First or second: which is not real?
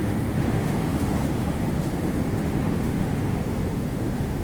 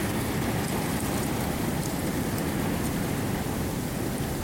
first